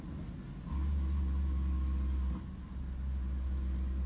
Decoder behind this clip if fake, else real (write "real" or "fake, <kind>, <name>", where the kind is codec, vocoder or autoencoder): real